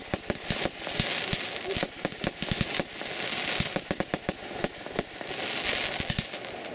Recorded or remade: recorded